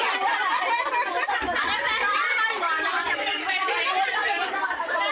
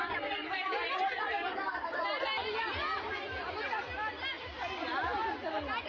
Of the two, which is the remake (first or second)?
first